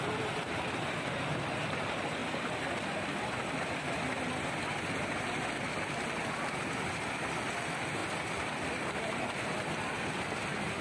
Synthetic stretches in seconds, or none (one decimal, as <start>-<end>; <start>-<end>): none